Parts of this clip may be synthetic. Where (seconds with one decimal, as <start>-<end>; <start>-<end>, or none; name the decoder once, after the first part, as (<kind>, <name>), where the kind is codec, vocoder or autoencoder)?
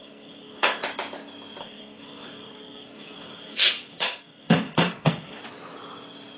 0.0-0.8 (codec, SNAC); 1.6-5.4